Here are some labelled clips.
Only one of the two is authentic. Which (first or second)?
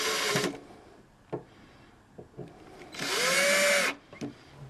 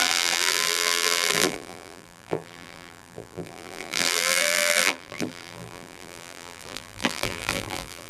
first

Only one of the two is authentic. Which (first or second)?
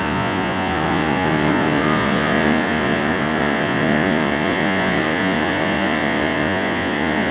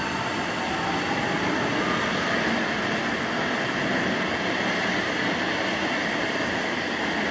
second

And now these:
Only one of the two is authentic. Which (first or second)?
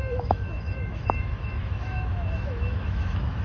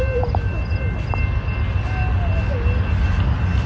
second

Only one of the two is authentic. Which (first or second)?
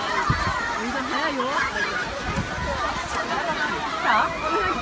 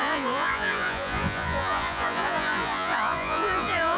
first